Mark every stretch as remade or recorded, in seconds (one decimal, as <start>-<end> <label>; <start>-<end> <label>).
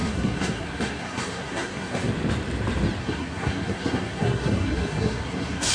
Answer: 0.0-2.1 remade; 2.1-3.0 recorded; 3.0-5.7 remade